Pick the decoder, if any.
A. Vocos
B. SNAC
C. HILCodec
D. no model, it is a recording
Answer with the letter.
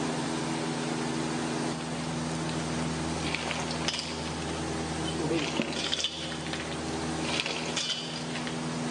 D